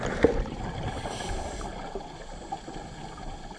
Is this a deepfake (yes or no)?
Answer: no